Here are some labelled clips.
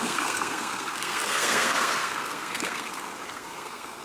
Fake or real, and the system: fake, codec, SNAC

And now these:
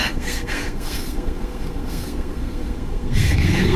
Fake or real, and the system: fake, codec, SNAC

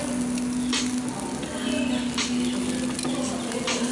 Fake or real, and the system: real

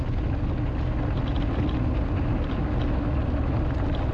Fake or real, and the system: real